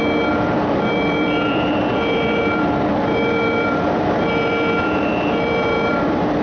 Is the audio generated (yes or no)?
yes